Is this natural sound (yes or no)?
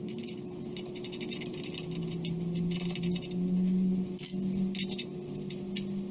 yes